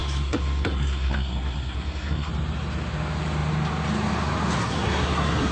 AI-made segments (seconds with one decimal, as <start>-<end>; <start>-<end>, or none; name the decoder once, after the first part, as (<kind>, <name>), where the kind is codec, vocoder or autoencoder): 0.0-2.3 (codec, SNAC); 4.6-5.5